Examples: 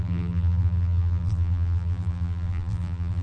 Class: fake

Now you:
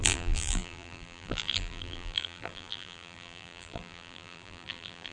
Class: fake